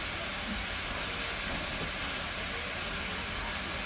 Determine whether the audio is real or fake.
real